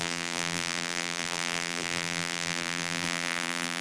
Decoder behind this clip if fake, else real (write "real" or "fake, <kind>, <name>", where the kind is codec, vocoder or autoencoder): fake, vocoder, BigVGAN v2